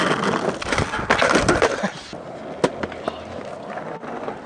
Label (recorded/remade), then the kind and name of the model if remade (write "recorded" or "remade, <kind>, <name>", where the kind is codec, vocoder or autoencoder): recorded